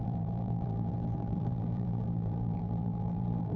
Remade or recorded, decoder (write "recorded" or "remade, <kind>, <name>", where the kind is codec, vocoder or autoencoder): remade, vocoder, BigVGAN v2